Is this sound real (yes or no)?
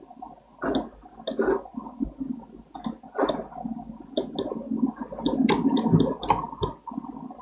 yes